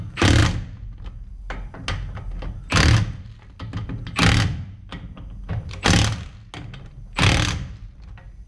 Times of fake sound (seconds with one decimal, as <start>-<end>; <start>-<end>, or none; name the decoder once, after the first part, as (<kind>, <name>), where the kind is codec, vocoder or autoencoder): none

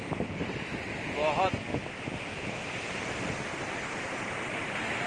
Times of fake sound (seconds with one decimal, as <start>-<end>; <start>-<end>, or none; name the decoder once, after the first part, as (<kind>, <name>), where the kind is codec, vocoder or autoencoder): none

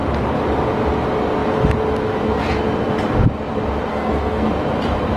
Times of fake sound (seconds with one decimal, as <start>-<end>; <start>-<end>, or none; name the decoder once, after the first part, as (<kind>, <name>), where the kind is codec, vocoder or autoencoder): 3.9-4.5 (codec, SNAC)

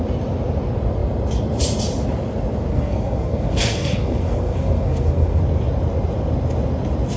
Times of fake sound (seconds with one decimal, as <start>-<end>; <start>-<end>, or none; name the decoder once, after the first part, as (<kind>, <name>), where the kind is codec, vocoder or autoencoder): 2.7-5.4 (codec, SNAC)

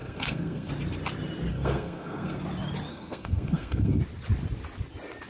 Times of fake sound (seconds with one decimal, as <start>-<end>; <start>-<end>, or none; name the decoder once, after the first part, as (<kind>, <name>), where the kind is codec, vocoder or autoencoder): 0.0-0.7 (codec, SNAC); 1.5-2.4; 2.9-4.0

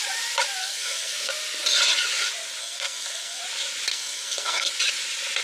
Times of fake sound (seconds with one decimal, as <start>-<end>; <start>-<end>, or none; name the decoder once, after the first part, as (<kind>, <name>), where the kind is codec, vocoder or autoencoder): 0.6-1.3 (codec, SNAC); 2.6-3.4; 3.9-4.7